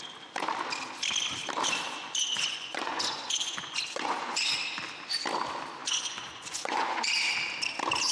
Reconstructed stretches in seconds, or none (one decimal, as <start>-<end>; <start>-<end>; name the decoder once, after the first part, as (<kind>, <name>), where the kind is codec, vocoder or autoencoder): 2.0-4.4 (vocoder, Vocos); 5.8-7.1